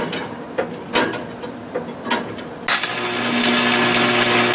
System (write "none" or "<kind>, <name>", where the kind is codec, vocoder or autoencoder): none